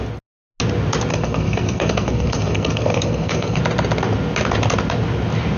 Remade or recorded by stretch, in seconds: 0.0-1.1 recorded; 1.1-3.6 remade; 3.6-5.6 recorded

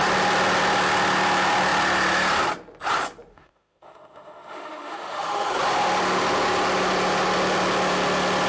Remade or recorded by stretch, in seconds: 0.0-3.3 recorded; 3.3-5.5 remade; 5.5-8.5 recorded

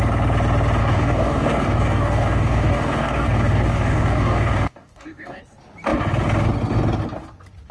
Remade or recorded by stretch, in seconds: 0.0-0.8 recorded; 0.8-5.4 remade; 5.4-7.7 recorded

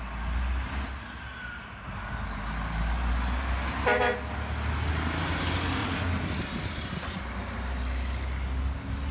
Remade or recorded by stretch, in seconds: 0.0-5.8 recorded; 5.8-7.4 remade; 7.4-9.1 recorded

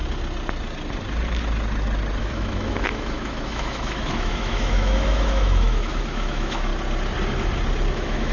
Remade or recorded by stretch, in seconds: 0.0-2.2 recorded; 2.2-6.7 remade; 6.7-7.9 recorded; 7.9-8.3 remade

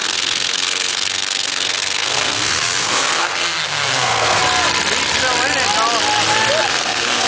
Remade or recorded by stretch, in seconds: 0.0-4.4 remade; 4.4-6.7 recorded; 6.7-7.3 remade